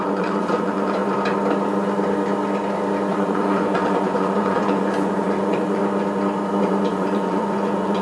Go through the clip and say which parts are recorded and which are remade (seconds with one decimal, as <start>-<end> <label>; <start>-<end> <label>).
0.0-1.0 remade; 1.0-3.1 recorded; 3.1-5.8 remade; 5.8-6.6 recorded; 6.6-8.0 remade